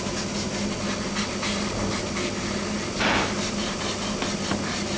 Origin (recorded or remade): recorded